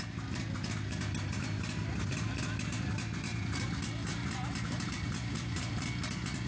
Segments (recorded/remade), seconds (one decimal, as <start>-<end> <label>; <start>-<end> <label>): 0.0-3.3 recorded; 3.3-5.9 remade; 5.9-6.5 recorded